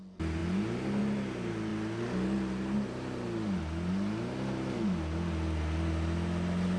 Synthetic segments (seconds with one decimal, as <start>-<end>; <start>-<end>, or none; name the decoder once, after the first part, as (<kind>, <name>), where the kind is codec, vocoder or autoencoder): none